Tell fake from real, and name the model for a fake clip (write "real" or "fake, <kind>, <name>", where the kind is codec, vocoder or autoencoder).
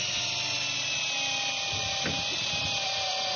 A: real